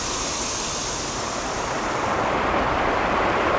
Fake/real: real